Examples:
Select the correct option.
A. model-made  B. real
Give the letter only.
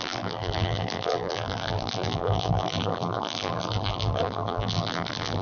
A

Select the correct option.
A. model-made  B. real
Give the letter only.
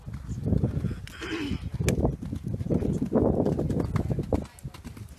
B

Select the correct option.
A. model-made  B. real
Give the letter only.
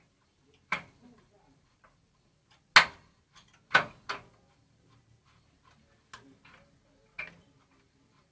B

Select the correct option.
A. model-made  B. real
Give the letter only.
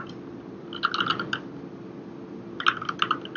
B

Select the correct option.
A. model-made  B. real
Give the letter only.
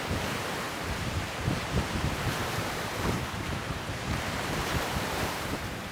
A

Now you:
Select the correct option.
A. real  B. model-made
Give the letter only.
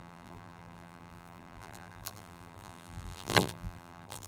B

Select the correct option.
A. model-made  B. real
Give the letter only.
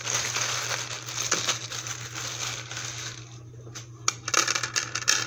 B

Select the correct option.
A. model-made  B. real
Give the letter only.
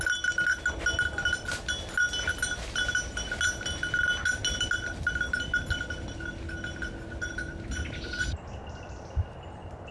B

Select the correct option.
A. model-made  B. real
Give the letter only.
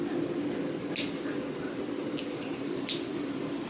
B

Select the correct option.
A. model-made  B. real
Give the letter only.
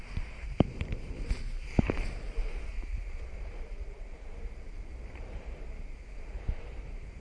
A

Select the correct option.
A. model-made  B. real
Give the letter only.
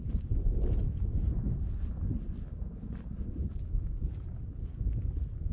B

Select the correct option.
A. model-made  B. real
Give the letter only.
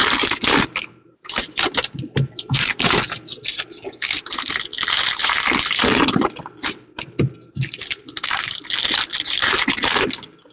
B